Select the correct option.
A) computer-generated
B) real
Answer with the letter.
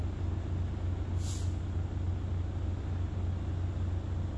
B